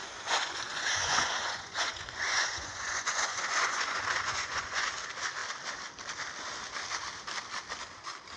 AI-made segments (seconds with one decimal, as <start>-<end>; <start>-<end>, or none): 0.0-4.9